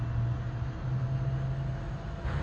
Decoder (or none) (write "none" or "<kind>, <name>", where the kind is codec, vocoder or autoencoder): none